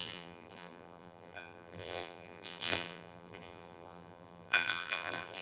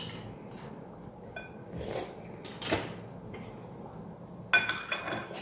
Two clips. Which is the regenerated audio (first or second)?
first